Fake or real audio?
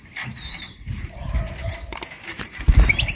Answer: fake